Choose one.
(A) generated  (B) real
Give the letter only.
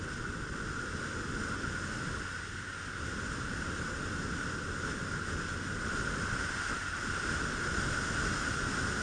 B